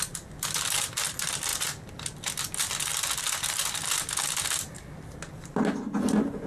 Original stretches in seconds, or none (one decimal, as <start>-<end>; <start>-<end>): 0.0-6.5